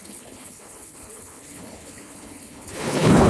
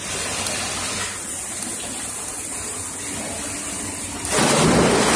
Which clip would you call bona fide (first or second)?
second